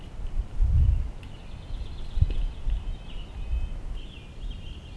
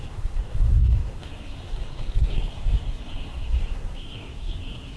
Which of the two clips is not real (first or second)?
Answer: second